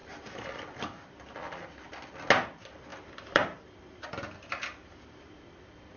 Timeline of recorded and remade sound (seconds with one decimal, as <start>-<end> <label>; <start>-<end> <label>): 0.0-0.5 remade; 0.5-2.9 recorded; 2.9-5.3 remade; 5.3-6.0 recorded